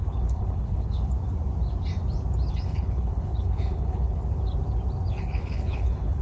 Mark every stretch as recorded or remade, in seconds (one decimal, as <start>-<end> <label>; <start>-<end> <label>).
0.0-1.1 remade; 1.1-2.5 recorded; 2.5-4.2 remade; 4.2-5.1 recorded; 5.1-6.2 remade